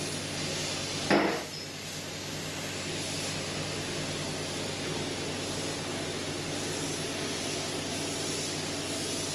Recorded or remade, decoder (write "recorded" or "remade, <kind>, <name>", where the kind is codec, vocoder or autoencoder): recorded